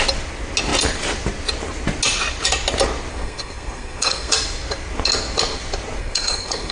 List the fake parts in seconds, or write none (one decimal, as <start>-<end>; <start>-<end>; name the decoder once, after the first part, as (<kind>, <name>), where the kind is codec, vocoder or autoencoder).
3.1-4.3 (codec, SNAC); 6.0-6.7